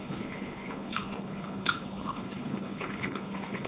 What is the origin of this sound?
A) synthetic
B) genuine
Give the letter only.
A